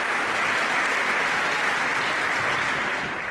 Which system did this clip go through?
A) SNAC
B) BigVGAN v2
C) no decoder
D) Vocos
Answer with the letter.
C